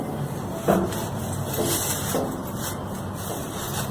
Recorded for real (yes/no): yes